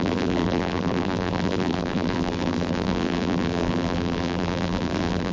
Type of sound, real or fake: fake